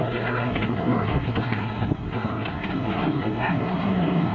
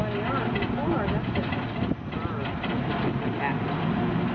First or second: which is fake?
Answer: first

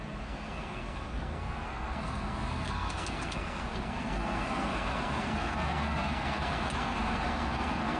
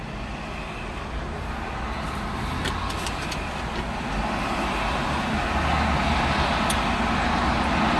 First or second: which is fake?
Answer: first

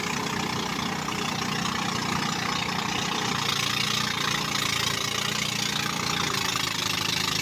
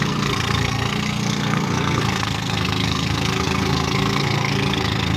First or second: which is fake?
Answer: second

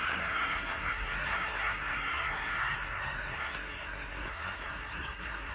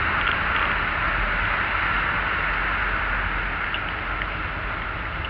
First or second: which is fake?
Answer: first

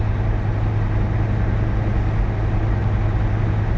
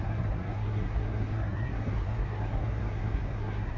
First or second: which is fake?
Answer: second